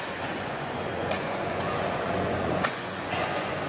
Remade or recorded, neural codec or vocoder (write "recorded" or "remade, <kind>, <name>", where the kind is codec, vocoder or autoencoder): remade, vocoder, Vocos